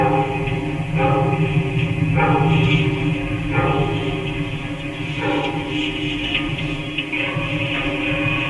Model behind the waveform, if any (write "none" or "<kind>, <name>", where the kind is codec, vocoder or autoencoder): none